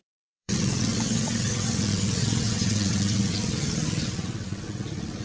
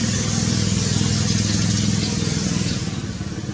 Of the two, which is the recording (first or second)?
second